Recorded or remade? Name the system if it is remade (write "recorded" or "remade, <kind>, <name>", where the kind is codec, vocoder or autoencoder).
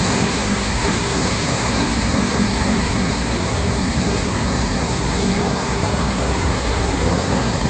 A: remade, codec, SNAC